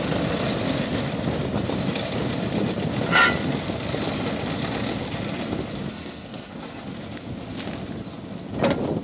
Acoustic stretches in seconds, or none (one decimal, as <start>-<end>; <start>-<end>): 0.0-5.9; 6.5-9.0